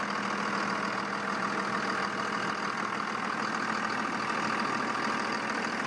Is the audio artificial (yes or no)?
no